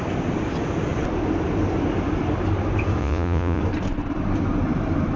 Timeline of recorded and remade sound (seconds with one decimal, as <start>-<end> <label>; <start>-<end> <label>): 0.0-3.0 recorded; 3.0-3.6 remade; 3.6-5.2 recorded